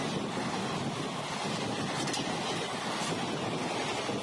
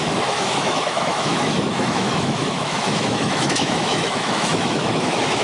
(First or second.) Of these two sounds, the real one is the first